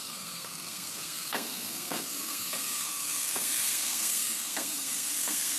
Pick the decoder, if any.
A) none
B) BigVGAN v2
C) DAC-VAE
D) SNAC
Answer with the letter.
D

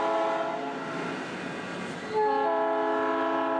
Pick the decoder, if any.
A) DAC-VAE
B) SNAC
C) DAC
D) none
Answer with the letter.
D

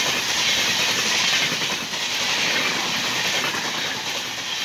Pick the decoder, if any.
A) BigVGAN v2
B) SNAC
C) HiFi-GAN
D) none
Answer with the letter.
D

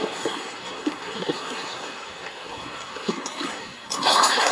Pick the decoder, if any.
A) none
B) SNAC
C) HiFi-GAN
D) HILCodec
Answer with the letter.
B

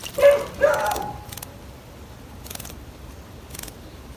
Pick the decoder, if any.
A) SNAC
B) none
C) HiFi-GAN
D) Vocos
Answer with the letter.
B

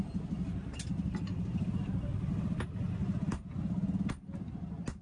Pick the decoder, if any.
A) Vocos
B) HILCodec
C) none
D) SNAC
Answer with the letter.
C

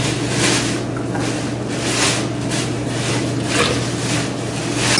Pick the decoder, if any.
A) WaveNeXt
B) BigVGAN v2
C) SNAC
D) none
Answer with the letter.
D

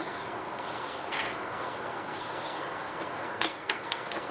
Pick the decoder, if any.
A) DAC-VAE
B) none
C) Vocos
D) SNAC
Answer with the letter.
D